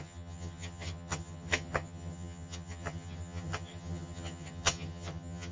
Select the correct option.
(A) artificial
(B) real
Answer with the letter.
A